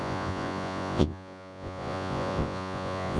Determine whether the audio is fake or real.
fake